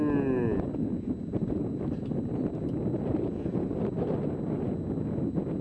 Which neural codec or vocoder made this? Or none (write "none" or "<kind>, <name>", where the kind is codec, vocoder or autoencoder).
none